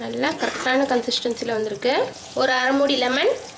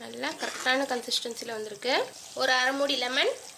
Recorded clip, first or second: second